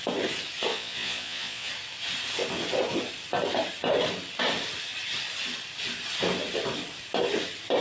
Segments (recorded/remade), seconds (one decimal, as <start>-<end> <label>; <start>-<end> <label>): 0.0-0.7 recorded; 0.7-1.7 remade; 1.7-7.8 recorded